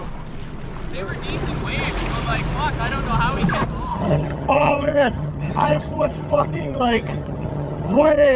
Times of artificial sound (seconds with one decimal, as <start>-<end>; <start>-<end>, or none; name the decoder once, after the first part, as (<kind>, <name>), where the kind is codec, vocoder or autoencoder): 3.9-8.4 (vocoder, HiFi-GAN)